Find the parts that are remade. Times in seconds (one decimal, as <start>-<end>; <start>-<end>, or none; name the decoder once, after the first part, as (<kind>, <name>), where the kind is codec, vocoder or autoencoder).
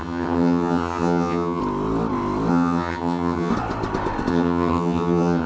0.0-1.6 (vocoder, HiFi-GAN); 2.5-3.5; 4.3-5.5